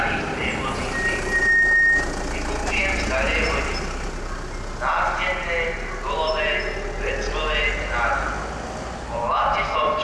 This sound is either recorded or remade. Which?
recorded